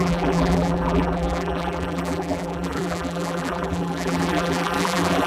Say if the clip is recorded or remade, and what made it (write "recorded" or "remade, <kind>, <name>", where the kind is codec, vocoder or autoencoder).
remade, vocoder, BigVGAN v2